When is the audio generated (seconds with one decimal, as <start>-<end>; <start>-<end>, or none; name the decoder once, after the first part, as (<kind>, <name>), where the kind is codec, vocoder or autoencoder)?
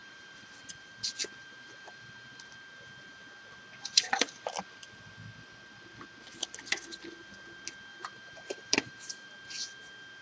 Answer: 0.0-0.7 (vocoder, BigVGAN v2); 1.4-2.5; 7.9-9.3